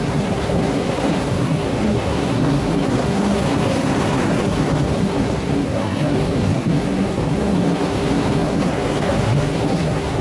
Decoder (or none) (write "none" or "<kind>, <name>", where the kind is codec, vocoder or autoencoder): codec, SNAC